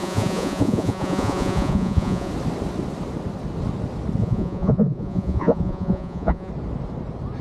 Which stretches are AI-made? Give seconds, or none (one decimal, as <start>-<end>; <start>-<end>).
0.0-2.3; 4.2-6.5